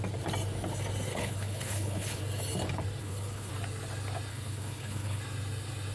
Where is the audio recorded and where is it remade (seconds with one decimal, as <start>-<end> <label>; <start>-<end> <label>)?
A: 0.0-1.1 recorded; 1.1-2.2 remade; 2.2-3.0 recorded; 3.0-3.5 remade; 3.5-4.3 recorded; 4.3-5.2 remade; 5.2-5.9 recorded